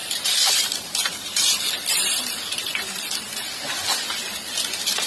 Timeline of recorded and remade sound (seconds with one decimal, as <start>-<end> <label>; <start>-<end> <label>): 0.0-2.2 remade; 2.2-5.1 recorded